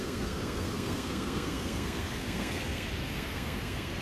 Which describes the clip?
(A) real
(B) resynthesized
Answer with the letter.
B